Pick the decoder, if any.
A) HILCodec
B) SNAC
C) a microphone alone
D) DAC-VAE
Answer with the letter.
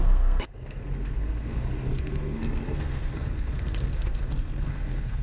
B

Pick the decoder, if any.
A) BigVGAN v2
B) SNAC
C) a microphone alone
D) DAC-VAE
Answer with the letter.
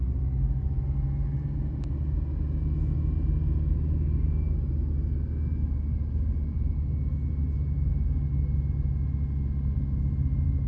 C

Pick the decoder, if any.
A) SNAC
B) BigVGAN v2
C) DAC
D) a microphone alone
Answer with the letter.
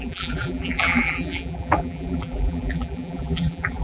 B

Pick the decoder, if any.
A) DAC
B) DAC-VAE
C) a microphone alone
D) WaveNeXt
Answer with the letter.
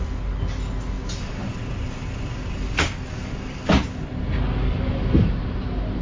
C